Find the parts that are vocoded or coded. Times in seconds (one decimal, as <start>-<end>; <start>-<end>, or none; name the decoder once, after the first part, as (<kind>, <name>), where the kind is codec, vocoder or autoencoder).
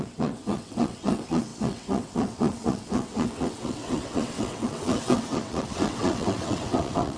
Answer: 0.0-7.2 (vocoder, WaveNeXt)